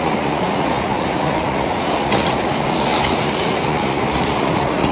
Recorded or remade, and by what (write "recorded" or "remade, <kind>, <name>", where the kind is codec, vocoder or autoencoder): remade, vocoder, Vocos